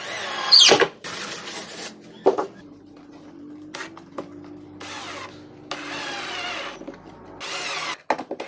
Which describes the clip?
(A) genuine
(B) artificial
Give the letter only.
A